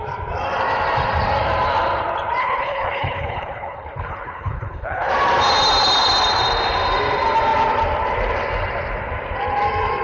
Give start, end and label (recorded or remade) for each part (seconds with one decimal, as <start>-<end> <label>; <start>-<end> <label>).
0.0-2.4 recorded; 2.4-5.1 remade; 5.1-10.0 recorded